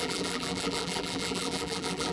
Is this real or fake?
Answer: fake